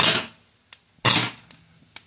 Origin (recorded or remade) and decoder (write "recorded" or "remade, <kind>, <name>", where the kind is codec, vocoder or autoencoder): recorded